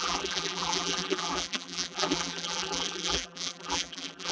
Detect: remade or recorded remade